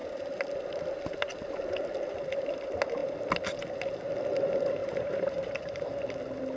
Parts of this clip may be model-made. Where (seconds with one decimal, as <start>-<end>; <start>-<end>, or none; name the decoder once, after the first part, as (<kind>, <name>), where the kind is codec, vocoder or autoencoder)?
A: 4.8-5.8 (vocoder, BigVGAN v2)